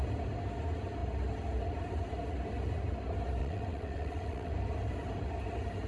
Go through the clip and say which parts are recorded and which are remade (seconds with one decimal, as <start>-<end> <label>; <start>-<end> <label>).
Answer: 0.0-3.4 recorded; 3.4-4.5 remade; 4.5-5.9 recorded